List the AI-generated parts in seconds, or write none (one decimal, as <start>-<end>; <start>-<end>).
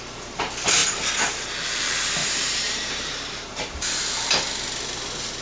2.2-3.9